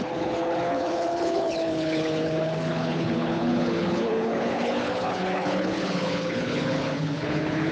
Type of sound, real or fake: fake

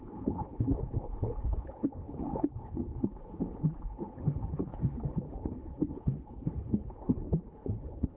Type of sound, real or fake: fake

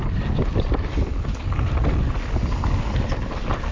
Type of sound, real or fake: real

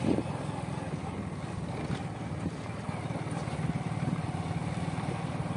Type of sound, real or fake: real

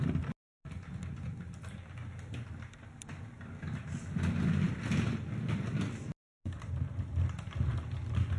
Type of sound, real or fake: real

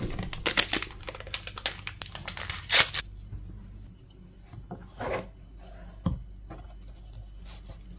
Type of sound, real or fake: real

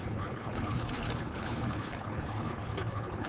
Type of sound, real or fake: fake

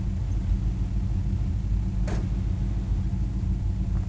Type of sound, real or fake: real